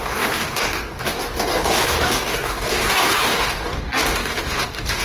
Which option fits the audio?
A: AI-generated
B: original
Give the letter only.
A